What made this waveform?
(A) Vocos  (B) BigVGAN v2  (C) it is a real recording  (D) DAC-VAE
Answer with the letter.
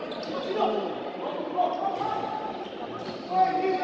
C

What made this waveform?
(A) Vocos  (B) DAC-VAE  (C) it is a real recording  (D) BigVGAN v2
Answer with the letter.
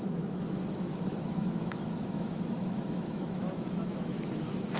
B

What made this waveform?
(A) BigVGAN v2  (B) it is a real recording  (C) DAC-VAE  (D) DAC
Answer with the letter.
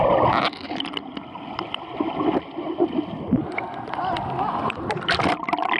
B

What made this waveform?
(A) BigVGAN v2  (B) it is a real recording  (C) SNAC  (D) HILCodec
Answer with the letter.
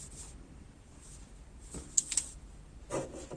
B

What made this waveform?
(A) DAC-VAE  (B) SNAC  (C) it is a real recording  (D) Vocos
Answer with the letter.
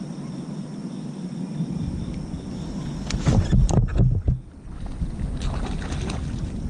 C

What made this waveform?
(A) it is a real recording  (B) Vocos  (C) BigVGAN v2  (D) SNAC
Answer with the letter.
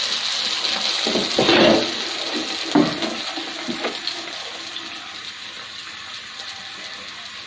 A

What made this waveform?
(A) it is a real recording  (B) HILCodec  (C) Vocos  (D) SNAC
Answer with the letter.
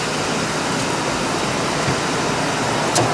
A